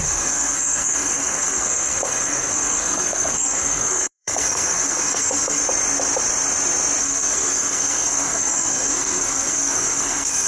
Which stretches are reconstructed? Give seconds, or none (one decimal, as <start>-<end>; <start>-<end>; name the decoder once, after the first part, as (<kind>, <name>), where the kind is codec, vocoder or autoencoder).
0.0-5.6 (codec, SNAC); 7.0-10.5

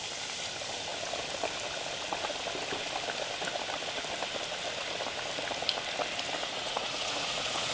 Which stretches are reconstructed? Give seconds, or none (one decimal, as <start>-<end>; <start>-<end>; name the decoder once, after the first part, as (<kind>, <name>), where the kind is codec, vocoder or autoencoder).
6.4-7.7 (vocoder, Vocos)

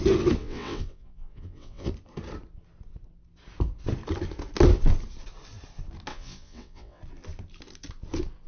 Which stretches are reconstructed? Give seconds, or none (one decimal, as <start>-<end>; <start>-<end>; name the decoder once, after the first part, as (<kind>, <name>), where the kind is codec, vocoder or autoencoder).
0.4-1.9 (vocoder, WaveNeXt); 6.1-7.0

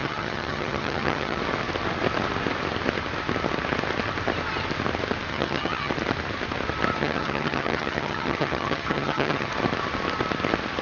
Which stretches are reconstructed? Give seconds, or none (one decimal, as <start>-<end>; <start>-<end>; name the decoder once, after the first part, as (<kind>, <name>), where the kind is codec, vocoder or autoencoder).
0.0-1.4 (vocoder, HiFi-GAN); 5.3-5.9; 7.0-9.5